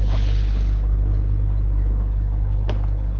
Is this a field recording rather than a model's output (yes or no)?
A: no